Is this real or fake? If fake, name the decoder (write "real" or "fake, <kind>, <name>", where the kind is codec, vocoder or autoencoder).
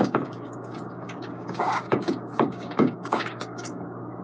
fake, codec, DAC